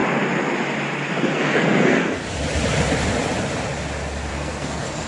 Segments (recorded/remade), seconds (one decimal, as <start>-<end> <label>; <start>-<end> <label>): 0.0-1.2 recorded; 1.2-2.2 remade; 2.2-4.3 recorded; 4.3-5.1 remade